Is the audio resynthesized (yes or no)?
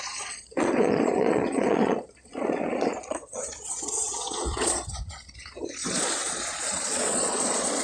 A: yes